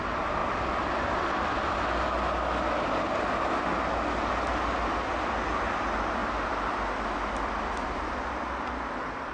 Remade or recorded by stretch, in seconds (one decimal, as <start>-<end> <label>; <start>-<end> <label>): 0.0-9.3 recorded